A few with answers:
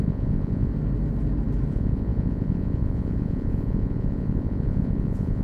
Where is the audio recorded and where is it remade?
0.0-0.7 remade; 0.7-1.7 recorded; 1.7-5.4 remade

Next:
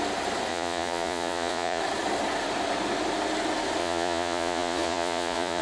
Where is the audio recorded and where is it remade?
0.0-0.5 recorded; 0.5-1.8 remade; 1.8-3.8 recorded; 3.8-5.6 remade

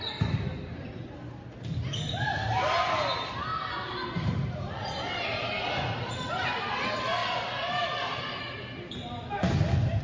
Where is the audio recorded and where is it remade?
0.0-7.2 recorded; 7.2-8.4 remade; 8.4-10.0 recorded

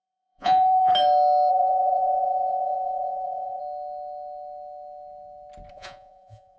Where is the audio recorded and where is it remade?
0.0-0.9 remade; 0.9-1.5 recorded; 1.5-3.6 remade; 3.6-5.7 recorded; 5.7-6.6 remade